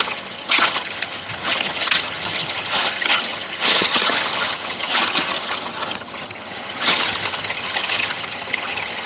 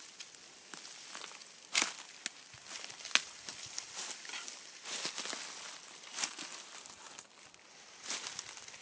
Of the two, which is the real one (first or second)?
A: second